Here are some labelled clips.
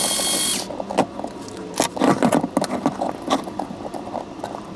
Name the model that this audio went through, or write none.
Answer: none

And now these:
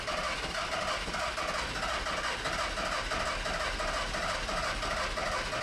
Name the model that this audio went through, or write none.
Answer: none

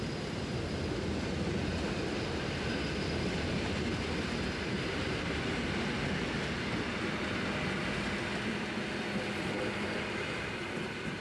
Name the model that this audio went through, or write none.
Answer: none